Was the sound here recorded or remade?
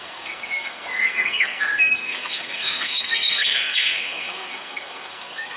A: remade